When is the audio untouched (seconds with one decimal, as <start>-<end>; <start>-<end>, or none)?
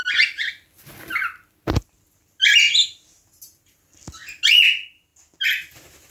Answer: 0.0-6.1